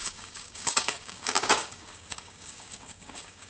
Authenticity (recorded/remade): remade